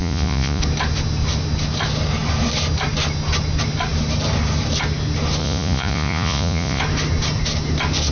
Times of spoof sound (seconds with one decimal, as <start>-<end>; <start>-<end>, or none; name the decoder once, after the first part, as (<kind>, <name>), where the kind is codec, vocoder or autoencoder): 0.0-0.6 (vocoder, Vocos); 5.4-6.8